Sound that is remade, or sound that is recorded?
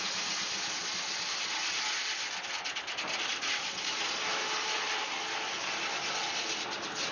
recorded